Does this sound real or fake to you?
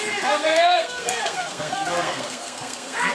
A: fake